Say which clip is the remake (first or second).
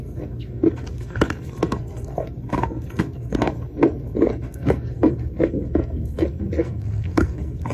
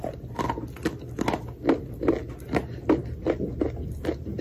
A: first